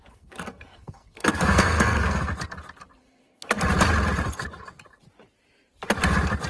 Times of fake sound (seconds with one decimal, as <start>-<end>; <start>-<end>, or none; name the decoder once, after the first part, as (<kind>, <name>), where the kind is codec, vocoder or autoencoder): 0.0-2.3 (codec, SNAC); 3.0-3.6